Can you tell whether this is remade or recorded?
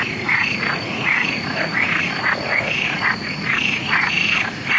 remade